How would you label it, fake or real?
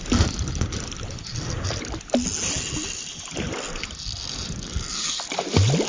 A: real